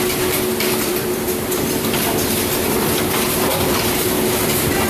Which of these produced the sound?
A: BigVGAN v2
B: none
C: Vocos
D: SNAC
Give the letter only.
A